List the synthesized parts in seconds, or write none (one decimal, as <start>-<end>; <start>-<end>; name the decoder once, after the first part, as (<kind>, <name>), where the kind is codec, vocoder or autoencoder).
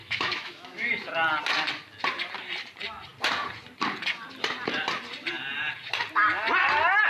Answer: 0.0-0.9 (autoencoder, DAC-VAE)